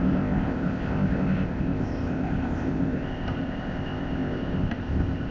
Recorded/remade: remade